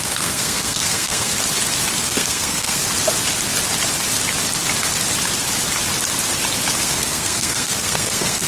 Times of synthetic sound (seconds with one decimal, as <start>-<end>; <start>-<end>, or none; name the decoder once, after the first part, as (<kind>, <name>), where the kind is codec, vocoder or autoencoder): 0.0-1.3 (codec, SNAC); 2.0-2.8; 6.8-8.5